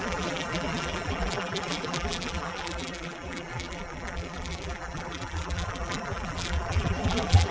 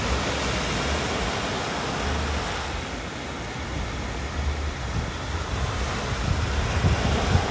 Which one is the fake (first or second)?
first